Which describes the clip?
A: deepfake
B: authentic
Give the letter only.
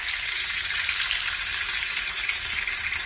A